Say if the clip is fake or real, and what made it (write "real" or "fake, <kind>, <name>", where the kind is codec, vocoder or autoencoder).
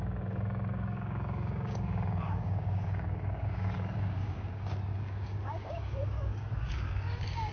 fake, codec, DAC